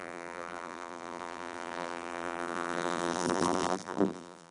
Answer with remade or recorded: remade